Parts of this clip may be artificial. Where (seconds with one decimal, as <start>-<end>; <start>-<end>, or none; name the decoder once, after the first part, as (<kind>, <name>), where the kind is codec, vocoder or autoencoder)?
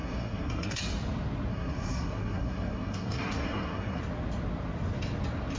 0.0-0.8 (codec, SNAC); 1.5-4.0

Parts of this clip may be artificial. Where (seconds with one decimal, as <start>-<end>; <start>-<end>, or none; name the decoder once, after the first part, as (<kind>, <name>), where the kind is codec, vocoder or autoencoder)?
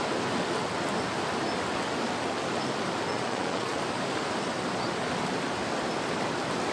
3.1-3.8 (vocoder, Vocos)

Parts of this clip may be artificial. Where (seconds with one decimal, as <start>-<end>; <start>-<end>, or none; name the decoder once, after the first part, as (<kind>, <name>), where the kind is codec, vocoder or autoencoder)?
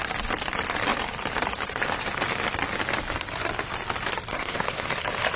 4.3-4.9 (codec, SNAC)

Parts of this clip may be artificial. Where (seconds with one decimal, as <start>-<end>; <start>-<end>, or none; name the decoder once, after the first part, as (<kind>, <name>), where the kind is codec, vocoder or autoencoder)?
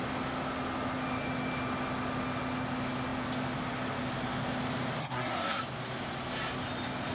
5.0-5.6 (codec, SNAC)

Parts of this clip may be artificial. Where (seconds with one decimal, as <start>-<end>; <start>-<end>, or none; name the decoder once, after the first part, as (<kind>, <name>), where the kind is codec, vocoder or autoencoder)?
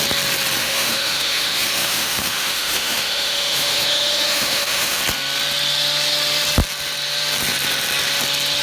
0.6-5.0 (autoencoder, DAC-VAE)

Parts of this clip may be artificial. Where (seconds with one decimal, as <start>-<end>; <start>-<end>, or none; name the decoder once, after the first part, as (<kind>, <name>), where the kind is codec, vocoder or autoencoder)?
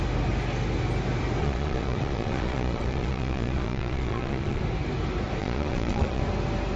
1.4-4.6 (vocoder, Vocos); 5.4-6.2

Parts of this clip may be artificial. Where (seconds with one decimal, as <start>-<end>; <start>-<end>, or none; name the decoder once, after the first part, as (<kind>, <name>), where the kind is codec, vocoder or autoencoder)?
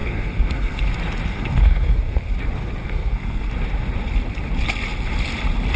0.0-0.9 (codec, SNAC); 1.3-2.2; 2.8-3.5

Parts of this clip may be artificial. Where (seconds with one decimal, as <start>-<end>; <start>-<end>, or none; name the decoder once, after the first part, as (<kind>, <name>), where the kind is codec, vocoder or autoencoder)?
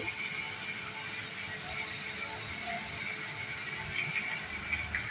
none